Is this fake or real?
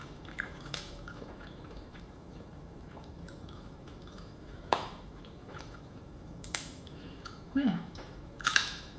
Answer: fake